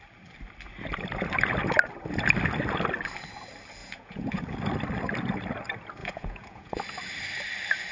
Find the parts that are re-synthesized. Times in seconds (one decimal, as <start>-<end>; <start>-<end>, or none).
3.8-4.4; 6.0-6.8